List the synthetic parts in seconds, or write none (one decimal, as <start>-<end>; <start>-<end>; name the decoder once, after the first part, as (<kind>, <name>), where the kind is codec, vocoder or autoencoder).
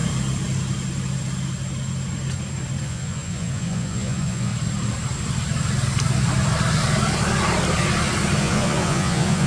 2.8-4.5 (vocoder, Vocos); 8.4-9.5